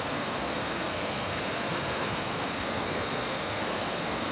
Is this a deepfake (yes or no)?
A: yes